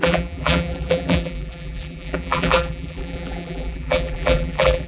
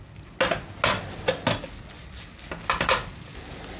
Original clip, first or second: second